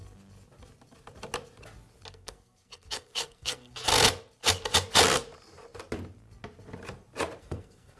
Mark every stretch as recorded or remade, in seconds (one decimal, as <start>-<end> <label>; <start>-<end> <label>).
0.0-2.1 recorded; 2.1-3.9 remade; 3.9-7.4 recorded; 7.4-8.0 remade